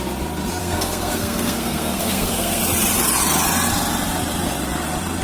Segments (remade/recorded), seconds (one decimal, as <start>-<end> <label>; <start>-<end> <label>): 0.0-0.6 recorded; 0.6-2.6 remade; 2.6-5.2 recorded